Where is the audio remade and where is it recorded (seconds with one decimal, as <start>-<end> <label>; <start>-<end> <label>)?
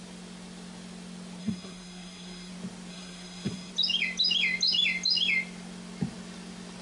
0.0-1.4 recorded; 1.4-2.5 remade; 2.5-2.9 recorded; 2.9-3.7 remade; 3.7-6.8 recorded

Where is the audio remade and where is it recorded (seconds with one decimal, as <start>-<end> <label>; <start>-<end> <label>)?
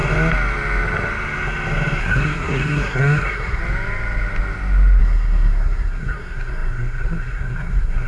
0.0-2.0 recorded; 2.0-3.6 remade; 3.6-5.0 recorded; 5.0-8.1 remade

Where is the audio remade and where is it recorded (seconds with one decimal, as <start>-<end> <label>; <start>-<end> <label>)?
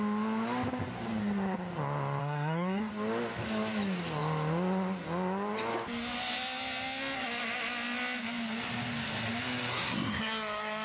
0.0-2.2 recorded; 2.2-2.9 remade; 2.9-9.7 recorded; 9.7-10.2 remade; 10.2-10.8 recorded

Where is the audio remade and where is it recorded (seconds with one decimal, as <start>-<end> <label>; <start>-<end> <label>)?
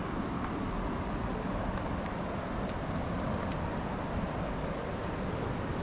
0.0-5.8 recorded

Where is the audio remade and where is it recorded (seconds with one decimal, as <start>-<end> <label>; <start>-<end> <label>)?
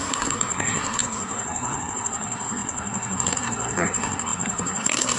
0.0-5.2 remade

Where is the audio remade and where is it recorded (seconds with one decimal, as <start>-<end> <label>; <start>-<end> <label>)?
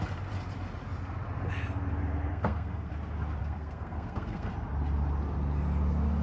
0.0-2.3 recorded; 2.3-2.9 remade; 2.9-3.4 recorded; 3.4-4.5 remade; 4.5-6.2 recorded